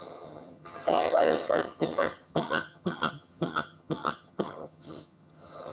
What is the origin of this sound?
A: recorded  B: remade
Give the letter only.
B